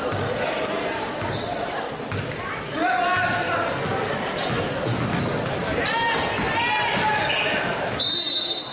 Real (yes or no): yes